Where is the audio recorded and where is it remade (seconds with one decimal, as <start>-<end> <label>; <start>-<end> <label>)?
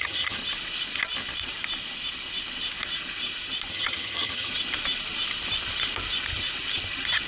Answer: 0.0-0.4 remade; 0.4-3.7 recorded; 3.7-4.5 remade; 4.5-7.3 recorded